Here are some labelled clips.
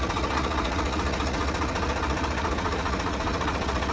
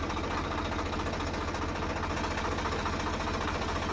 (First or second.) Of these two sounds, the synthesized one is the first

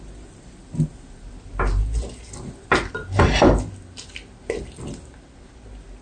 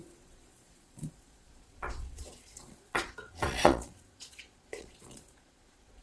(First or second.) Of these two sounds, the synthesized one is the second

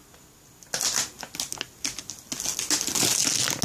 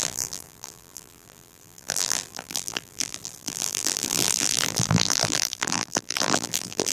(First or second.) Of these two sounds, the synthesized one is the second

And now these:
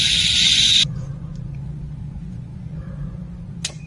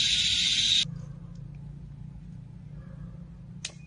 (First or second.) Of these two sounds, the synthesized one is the first